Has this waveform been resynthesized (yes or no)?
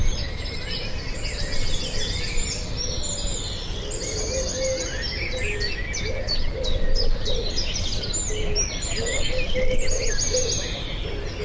no